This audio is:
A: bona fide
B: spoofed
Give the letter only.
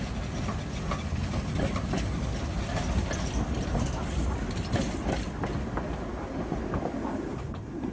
A